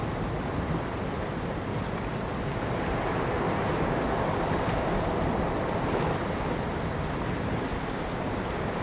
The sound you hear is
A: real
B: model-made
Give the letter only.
A